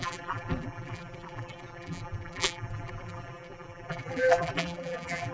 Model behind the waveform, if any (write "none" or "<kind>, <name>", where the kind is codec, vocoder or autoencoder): vocoder, BigVGAN v2